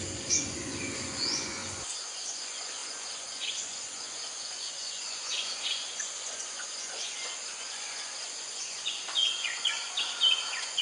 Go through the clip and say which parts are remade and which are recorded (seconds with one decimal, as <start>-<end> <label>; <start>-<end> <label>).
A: 0.0-10.8 remade